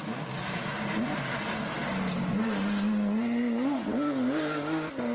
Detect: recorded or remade recorded